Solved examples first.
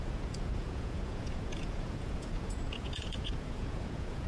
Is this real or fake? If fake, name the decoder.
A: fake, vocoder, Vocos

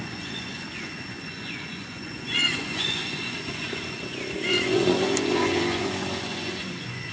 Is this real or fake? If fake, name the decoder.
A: fake, vocoder, Vocos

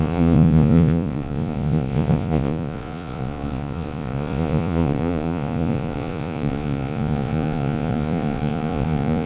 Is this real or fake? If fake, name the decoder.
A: fake, vocoder, Vocos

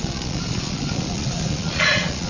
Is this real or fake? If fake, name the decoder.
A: fake, vocoder, Vocos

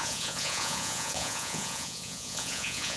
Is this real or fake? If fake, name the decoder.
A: fake, vocoder, Vocos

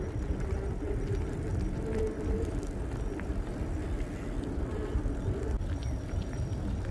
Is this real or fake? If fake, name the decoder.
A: real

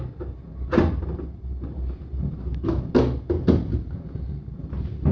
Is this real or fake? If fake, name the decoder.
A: real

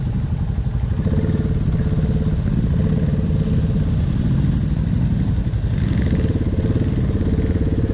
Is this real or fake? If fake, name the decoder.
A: real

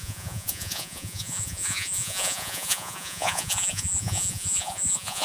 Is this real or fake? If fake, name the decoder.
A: fake, vocoder, Vocos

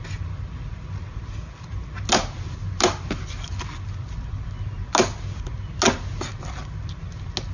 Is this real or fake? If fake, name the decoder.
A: real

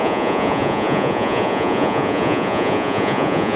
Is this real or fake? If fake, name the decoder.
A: fake, vocoder, Vocos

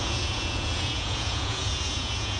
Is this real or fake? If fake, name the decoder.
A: fake, vocoder, Vocos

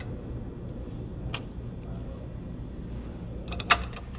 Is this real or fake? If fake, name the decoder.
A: real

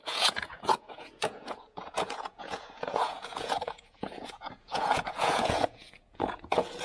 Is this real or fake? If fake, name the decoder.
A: fake, vocoder, Vocos